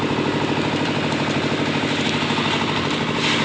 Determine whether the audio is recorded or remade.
recorded